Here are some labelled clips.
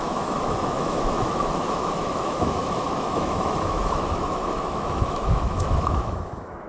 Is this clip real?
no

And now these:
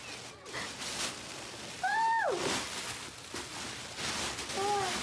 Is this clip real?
yes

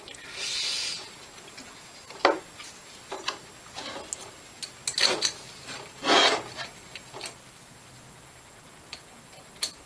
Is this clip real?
yes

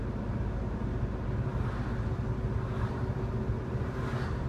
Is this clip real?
yes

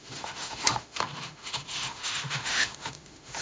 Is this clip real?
no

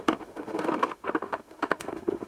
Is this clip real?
no